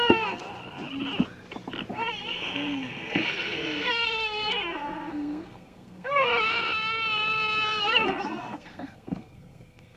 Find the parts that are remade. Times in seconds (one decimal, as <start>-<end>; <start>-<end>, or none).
0.0-0.4; 1.9-6.3; 7.8-10.0